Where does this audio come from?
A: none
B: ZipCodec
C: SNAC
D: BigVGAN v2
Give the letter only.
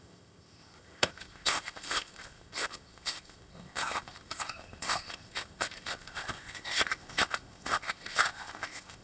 B